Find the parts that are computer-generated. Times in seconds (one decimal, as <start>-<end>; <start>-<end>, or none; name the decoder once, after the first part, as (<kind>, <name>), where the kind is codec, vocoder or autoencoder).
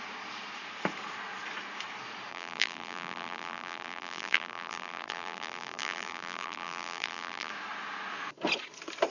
2.3-7.5 (vocoder, BigVGAN v2)